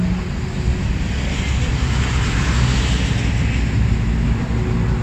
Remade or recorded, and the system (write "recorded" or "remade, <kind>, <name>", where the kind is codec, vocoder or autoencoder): recorded